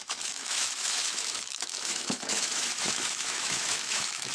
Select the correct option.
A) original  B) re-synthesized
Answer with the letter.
B